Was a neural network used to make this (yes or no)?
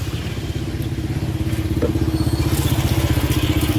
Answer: no